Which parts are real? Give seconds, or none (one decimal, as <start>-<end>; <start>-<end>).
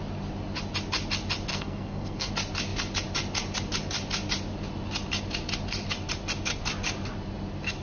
0.0-1.5; 2.3-7.8